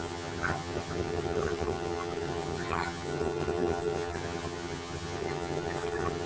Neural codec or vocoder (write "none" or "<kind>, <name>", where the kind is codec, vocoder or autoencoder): vocoder, HiFi-GAN